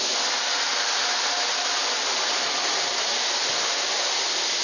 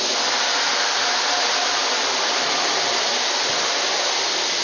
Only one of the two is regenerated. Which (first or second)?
second